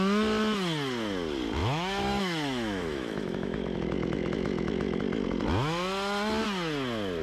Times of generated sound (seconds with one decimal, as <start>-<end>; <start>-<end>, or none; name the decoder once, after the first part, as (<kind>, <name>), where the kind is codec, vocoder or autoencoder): 1.6-5.0 (autoencoder, DAC-VAE)